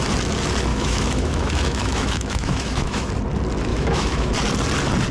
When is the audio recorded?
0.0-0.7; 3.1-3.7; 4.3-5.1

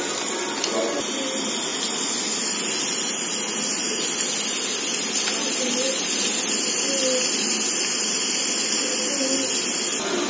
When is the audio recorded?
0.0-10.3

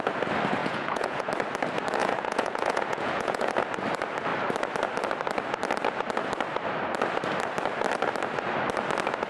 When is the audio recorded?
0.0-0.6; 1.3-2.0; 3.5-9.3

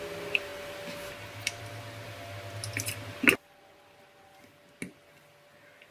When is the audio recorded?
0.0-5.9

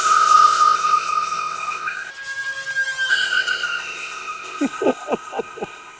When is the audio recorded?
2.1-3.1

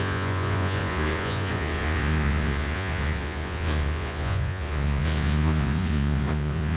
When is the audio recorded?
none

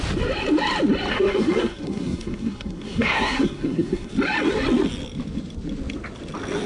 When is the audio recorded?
0.0-1.1; 4.1-6.7

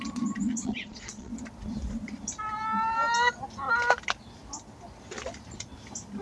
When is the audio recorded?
0.0-0.4; 1.3-6.2